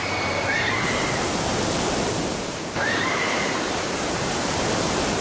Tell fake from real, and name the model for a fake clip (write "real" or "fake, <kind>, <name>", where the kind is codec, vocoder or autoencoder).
fake, vocoder, BigVGAN v2